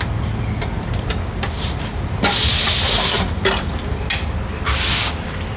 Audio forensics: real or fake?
real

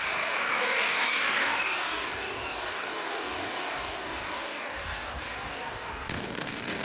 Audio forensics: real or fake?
fake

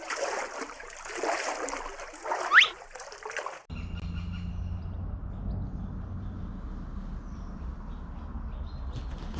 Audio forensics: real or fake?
real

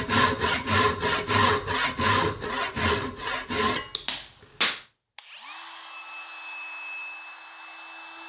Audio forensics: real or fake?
real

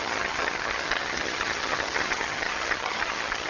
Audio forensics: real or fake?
fake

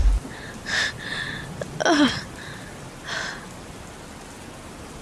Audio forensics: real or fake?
real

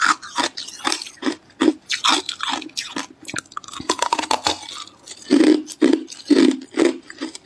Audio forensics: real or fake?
real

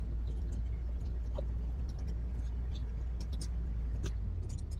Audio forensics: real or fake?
real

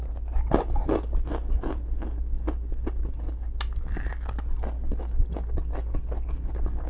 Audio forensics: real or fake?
real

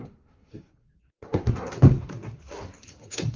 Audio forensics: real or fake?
fake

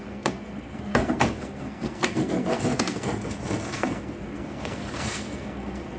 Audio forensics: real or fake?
fake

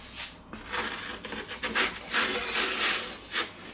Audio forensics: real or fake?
real